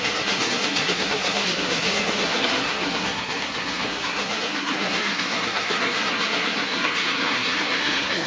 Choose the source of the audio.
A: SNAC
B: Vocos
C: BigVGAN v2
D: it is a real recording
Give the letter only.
A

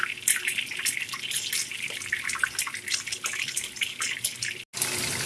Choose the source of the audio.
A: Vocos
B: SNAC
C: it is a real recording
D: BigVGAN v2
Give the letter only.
C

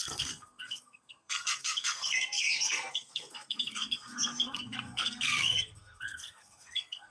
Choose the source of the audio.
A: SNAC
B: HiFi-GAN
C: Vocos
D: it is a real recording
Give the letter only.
A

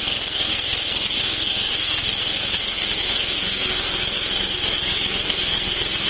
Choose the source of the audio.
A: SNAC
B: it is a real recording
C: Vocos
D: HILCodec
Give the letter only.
A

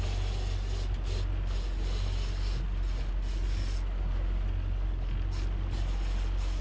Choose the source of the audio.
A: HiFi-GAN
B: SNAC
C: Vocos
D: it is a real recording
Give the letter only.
D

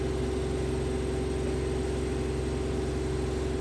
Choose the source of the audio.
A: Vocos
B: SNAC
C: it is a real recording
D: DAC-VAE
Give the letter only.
C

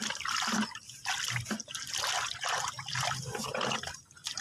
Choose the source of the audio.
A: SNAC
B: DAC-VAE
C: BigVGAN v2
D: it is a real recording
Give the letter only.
D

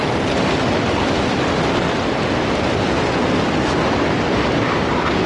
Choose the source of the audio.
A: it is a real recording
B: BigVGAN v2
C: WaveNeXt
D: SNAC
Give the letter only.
A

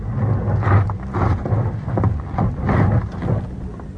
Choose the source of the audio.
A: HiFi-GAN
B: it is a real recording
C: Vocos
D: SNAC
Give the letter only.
B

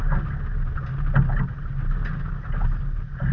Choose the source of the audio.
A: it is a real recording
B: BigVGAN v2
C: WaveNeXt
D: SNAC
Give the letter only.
A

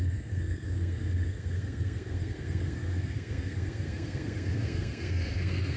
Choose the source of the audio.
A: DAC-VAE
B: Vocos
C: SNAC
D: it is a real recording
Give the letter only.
C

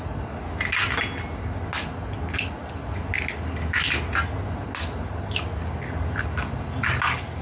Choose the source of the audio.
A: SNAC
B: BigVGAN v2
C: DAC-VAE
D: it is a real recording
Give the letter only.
D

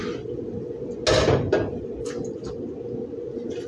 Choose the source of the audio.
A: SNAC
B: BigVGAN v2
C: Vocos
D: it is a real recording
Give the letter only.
D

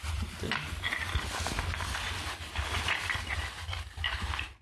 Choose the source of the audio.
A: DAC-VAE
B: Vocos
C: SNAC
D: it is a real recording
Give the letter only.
D